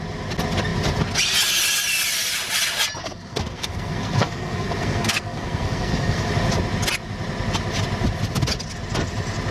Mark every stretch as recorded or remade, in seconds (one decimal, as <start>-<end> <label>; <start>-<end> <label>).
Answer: 0.0-3.0 recorded; 3.0-6.3 remade; 6.3-9.5 recorded

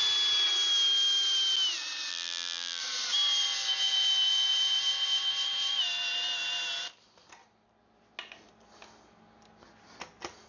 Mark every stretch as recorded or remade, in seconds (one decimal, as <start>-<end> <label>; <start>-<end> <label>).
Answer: 0.0-2.1 recorded; 2.1-2.8 remade; 2.8-10.5 recorded

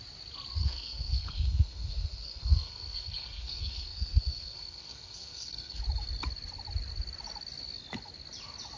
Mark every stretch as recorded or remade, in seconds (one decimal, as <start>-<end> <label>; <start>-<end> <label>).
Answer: 0.0-0.6 recorded; 0.6-5.8 remade; 5.8-8.8 recorded

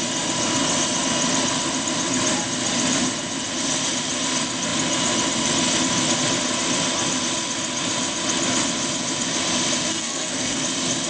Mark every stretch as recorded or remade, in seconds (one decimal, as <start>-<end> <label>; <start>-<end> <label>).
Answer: 0.0-9.9 recorded; 9.9-10.6 remade; 10.6-11.1 recorded

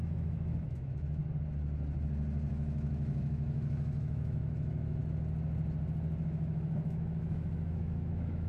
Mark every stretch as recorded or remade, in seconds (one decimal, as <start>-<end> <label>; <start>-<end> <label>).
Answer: 0.0-1.2 remade; 1.2-2.5 recorded; 2.5-5.0 remade; 5.0-6.2 recorded; 6.2-8.5 remade

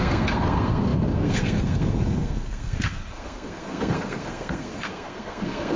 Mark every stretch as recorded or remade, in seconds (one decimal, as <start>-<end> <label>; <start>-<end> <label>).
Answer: 0.0-5.8 remade

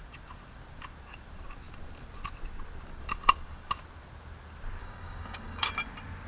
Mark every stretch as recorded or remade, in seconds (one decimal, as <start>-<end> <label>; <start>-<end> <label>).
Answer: 0.0-4.8 recorded; 4.8-5.7 remade; 5.7-6.3 recorded

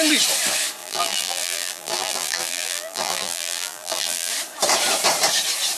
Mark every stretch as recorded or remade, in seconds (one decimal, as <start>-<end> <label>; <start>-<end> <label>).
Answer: 0.0-0.8 recorded; 0.8-4.3 remade; 4.3-5.8 recorded